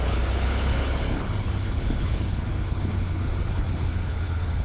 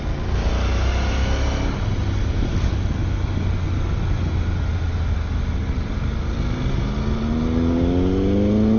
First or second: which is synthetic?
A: first